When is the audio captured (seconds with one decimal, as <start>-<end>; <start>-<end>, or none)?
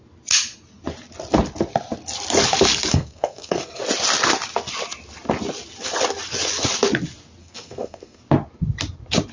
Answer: 0.0-2.9; 3.8-7.4; 8.2-9.3